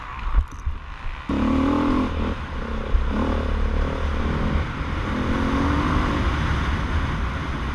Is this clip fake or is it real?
real